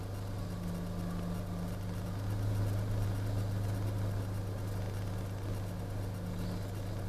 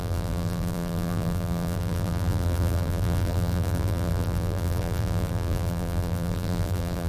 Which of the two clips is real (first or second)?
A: first